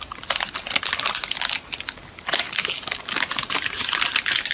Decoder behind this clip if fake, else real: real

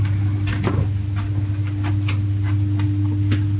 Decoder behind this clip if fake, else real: real